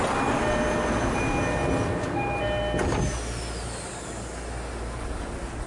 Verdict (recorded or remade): recorded